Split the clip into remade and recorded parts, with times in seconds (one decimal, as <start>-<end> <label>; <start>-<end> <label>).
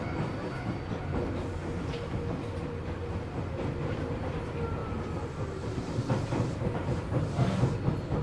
0.0-4.8 recorded; 4.8-7.6 remade; 7.6-8.2 recorded